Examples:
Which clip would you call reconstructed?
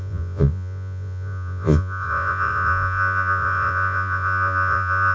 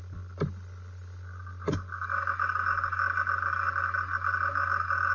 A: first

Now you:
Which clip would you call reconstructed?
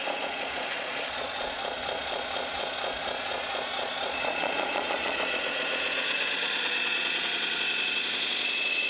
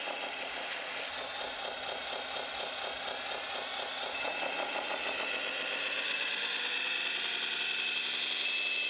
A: first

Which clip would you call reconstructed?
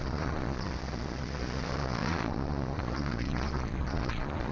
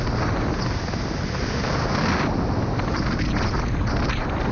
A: first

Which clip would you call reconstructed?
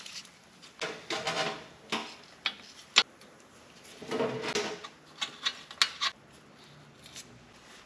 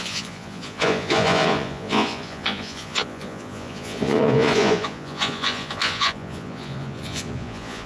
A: second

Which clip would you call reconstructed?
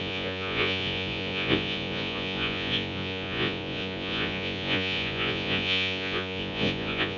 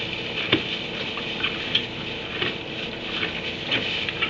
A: first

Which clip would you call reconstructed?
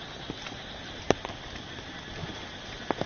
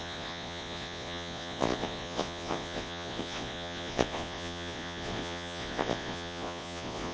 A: second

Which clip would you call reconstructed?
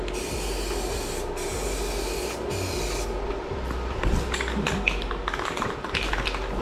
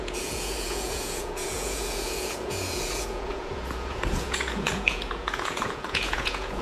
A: second